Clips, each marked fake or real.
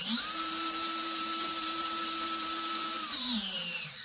fake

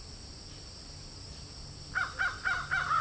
real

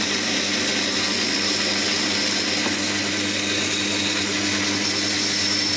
real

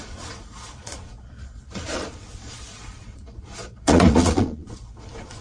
fake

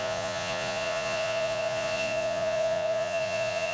fake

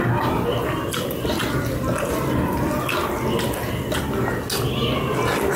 real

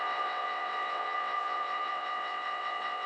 fake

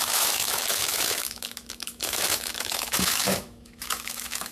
fake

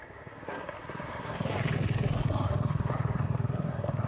fake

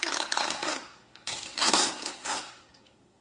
fake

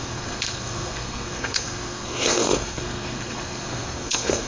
fake